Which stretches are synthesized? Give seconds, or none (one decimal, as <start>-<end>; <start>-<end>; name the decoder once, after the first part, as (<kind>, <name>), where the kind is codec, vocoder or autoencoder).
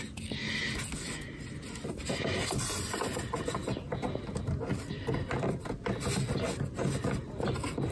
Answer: 3.6-4.2 (vocoder, BigVGAN v2)